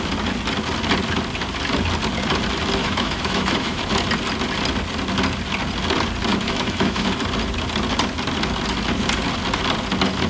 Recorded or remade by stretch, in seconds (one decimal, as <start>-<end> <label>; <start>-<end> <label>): 0.0-2.8 recorded; 2.8-3.8 remade; 3.8-6.3 recorded; 6.3-7.1 remade; 7.1-10.3 recorded